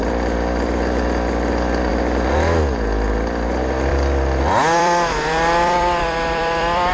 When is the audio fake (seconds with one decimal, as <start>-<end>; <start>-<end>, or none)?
3.9-6.9